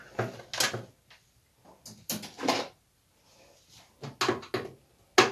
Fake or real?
real